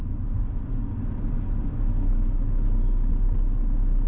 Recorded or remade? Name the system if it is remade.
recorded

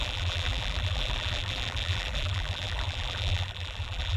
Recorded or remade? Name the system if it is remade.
remade, vocoder, BigVGAN v2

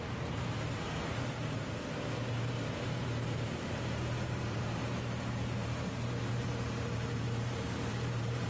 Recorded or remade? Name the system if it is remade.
remade, vocoder, BigVGAN v2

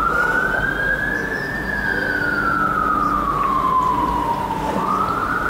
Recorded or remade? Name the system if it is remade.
recorded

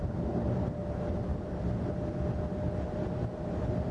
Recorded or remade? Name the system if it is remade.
recorded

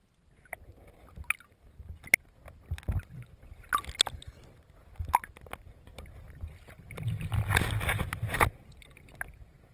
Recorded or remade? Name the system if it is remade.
recorded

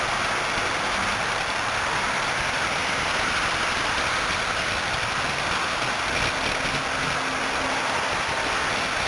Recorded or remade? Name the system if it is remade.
recorded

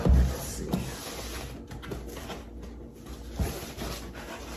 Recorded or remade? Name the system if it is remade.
recorded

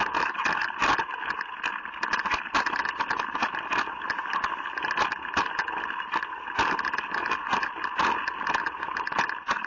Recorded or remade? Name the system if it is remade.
recorded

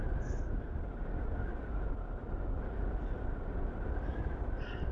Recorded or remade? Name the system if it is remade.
recorded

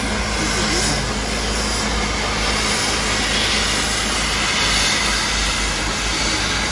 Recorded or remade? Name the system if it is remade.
recorded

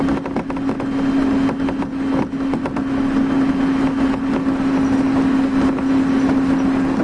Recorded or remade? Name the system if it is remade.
recorded